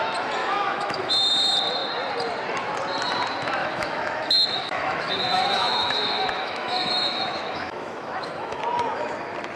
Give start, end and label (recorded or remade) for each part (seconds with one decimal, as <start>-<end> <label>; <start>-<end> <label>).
0.0-0.4 recorded; 0.4-1.1 remade; 1.1-3.6 recorded; 3.6-8.6 remade; 8.6-9.6 recorded